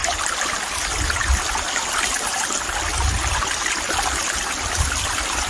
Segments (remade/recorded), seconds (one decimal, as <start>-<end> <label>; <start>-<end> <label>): 0.0-5.5 recorded